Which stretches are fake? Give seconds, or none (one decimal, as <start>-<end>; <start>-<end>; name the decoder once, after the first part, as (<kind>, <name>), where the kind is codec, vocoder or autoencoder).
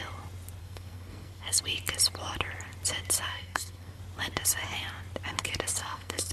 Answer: 0.6-1.6 (codec, SNAC); 3.3-4.0; 5.8-6.3